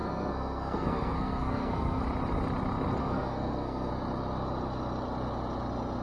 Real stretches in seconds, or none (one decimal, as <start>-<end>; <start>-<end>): 2.0-3.0; 3.9-6.0